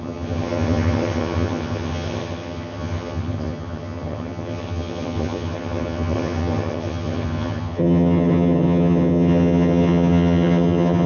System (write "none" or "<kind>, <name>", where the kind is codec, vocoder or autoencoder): vocoder, HiFi-GAN